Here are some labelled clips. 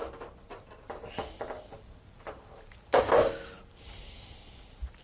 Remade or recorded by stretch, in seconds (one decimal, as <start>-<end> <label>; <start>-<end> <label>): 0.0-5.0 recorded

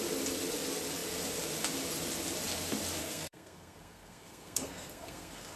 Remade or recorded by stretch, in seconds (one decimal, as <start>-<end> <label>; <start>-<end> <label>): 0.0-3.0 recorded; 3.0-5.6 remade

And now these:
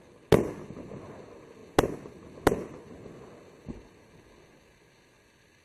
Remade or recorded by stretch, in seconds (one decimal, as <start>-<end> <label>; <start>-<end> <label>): 0.0-5.6 recorded

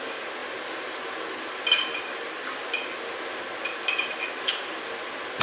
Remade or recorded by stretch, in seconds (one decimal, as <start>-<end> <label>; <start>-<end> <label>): 0.0-5.4 recorded

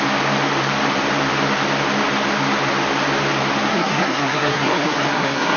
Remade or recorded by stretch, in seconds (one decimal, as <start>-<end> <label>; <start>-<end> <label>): 0.0-3.7 recorded; 3.7-5.6 remade

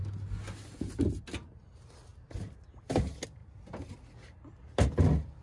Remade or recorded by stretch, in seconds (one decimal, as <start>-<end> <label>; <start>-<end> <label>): 0.0-5.4 recorded

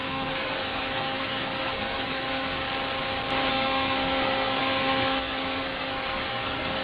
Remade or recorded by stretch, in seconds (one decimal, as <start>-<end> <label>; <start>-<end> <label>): 0.0-2.7 remade; 2.7-3.5 recorded; 3.5-6.8 remade

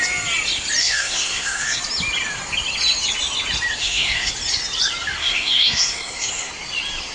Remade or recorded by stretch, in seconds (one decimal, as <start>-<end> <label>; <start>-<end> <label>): 0.0-0.8 recorded; 0.8-1.8 remade; 1.8-3.8 recorded; 3.8-4.3 remade; 4.3-5.2 recorded; 5.2-6.5 remade; 6.5-7.1 recorded